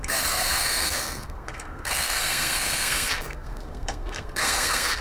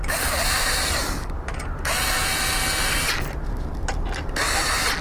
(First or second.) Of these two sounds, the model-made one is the first